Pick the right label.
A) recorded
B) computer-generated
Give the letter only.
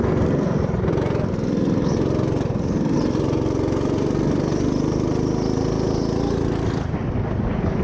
A